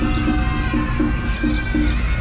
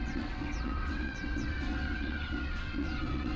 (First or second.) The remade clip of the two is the second